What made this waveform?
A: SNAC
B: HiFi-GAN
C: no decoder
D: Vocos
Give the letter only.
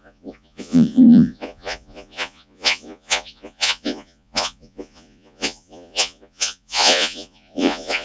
D